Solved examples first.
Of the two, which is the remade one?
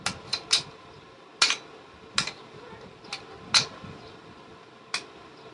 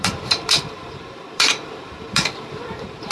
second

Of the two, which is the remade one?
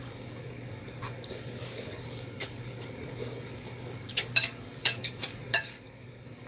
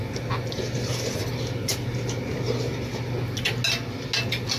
first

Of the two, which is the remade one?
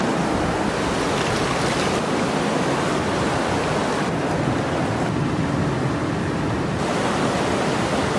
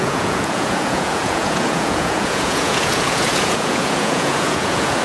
second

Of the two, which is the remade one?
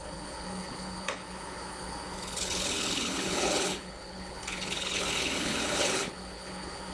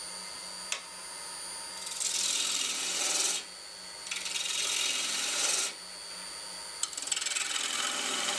first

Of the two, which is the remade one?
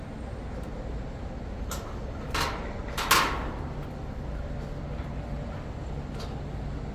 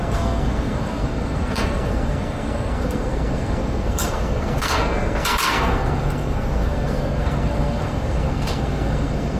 second